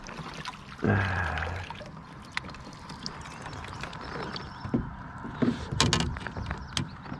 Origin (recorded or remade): recorded